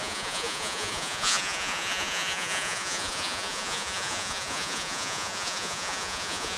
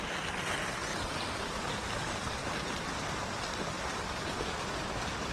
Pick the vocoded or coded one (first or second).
first